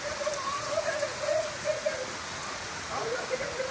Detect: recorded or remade remade